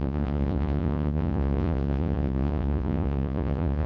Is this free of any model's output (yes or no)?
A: no